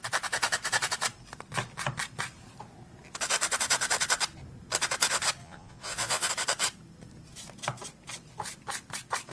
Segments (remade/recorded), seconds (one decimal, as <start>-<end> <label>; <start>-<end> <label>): 0.0-5.4 recorded; 5.4-6.3 remade; 6.3-9.3 recorded